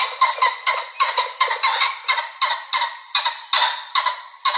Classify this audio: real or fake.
real